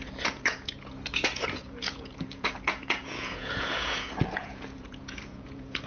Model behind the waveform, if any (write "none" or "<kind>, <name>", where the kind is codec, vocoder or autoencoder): vocoder, Vocos